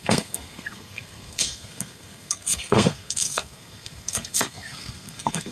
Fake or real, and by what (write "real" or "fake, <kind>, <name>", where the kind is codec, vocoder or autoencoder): fake, codec, SNAC